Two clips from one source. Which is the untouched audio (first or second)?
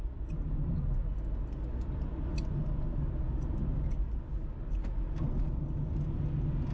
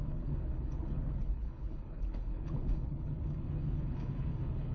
first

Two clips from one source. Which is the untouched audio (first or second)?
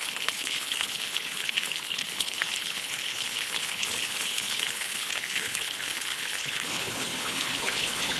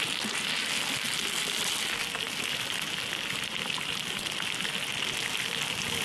second